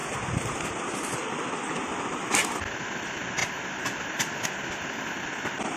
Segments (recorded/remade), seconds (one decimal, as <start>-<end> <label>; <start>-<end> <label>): 0.0-5.8 recorded